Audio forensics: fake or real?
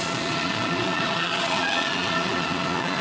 fake